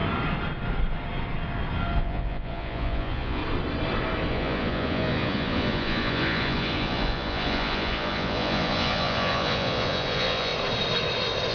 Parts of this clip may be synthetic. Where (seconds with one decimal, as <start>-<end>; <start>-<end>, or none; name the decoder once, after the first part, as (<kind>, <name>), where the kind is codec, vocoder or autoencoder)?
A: 2.0-3.4 (vocoder, Vocos); 4.3-10.5